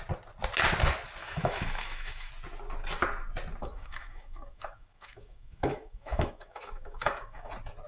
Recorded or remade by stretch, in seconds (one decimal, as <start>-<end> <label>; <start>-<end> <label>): 0.0-1.2 recorded; 1.2-2.3 remade; 2.3-3.6 recorded; 3.6-7.5 remade; 7.5-7.9 recorded